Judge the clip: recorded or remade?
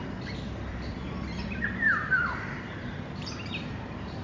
remade